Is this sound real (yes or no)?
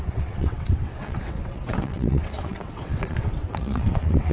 no